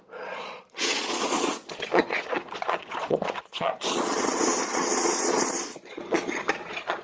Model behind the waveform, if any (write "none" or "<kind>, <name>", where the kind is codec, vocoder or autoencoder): vocoder, Vocos